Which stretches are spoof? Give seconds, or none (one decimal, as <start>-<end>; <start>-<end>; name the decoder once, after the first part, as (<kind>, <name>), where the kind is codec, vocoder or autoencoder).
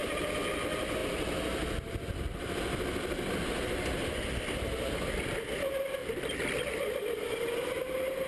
6.0-6.6 (vocoder, BigVGAN v2)